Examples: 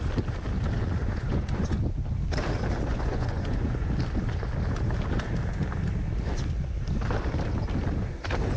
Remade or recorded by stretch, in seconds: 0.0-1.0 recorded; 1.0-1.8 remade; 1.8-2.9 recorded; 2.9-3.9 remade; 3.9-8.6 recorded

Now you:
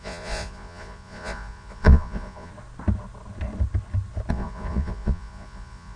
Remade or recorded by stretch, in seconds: 0.0-2.5 remade; 2.5-4.3 recorded; 4.3-6.0 remade